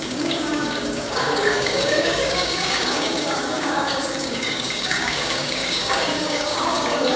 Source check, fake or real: fake